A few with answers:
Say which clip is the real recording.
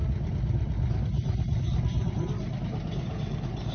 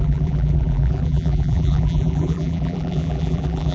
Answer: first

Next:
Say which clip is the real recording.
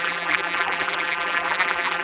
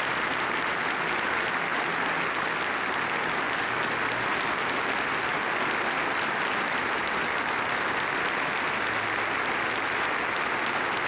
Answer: second